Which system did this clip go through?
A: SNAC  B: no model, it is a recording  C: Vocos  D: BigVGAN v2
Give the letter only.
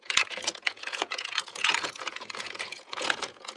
C